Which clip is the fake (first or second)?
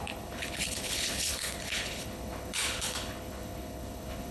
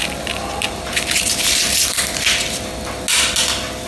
first